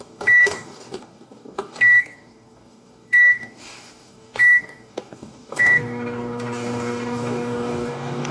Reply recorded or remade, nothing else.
remade